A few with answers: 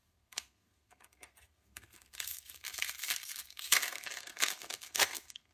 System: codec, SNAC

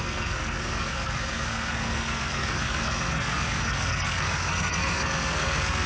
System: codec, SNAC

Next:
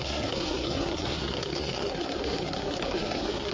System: codec, SNAC